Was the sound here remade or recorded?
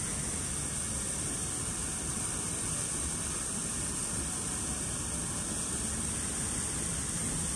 recorded